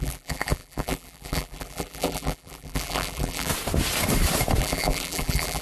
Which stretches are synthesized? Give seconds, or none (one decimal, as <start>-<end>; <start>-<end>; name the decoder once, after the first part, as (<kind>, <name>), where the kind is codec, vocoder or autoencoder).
0.0-3.5 (vocoder, BigVGAN v2); 4.6-5.6